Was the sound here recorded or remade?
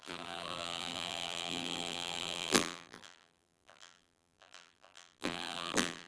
remade